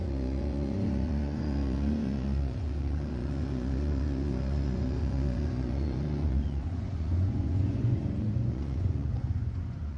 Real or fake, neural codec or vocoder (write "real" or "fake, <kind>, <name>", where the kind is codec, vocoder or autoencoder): fake, vocoder, Vocos